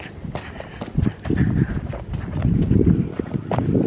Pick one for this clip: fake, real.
real